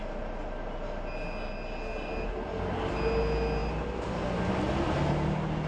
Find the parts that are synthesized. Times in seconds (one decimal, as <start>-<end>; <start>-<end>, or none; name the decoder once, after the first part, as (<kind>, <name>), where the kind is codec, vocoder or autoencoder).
none